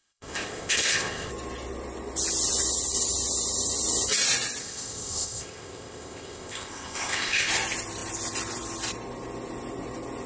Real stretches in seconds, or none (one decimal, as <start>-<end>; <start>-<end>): 1.3-4.6; 7.5-10.3